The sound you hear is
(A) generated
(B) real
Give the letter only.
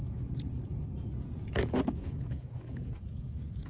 A